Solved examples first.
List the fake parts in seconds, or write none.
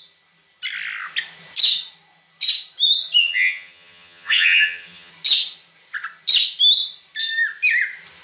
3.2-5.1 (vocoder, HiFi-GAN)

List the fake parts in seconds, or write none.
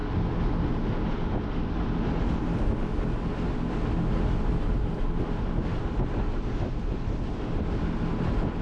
none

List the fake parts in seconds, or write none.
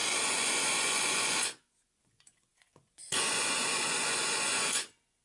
0.0-5.2 (vocoder, Vocos)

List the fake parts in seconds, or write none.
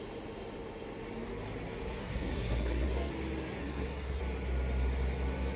2.0-3.1 (codec, SNAC); 3.6-4.2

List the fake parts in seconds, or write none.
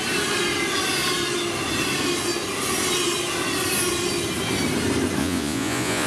5.2-6.1 (vocoder, Vocos)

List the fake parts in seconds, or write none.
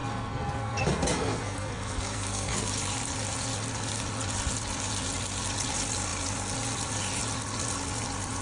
0.0-2.7 (codec, SNAC)